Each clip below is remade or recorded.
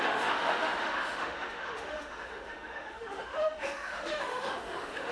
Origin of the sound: remade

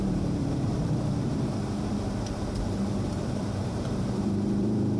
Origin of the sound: remade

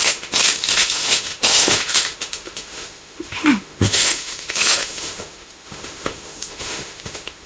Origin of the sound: remade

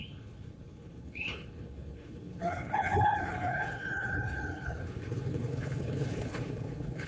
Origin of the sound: remade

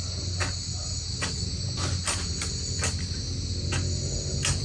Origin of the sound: recorded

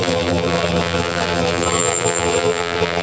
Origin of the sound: remade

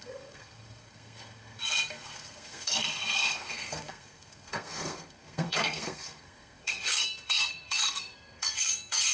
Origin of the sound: remade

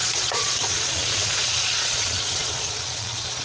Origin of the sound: remade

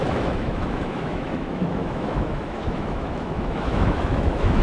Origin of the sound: remade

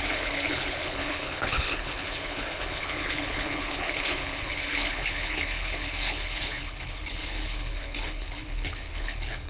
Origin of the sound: remade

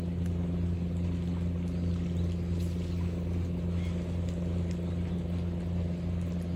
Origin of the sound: recorded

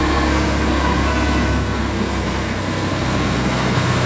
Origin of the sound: remade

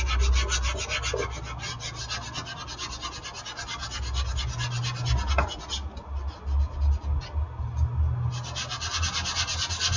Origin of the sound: recorded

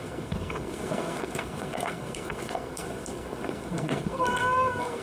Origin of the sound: remade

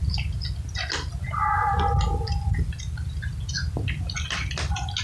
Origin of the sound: recorded